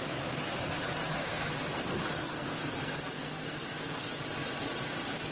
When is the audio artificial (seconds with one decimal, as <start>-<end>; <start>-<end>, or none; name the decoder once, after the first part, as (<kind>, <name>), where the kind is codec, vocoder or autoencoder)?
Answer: 1.2-4.2 (codec, SNAC)